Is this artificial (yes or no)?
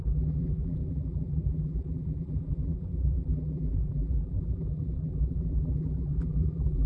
yes